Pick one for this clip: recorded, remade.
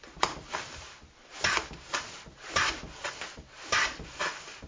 recorded